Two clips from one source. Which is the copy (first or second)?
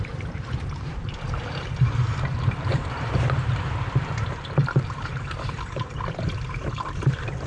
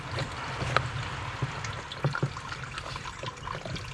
first